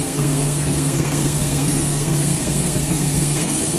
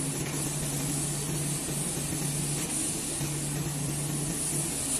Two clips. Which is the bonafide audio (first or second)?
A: second